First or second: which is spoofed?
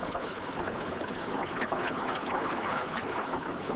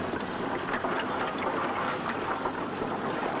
first